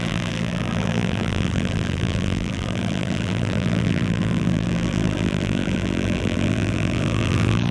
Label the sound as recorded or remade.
remade